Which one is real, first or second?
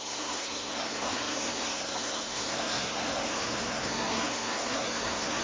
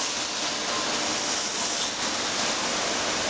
second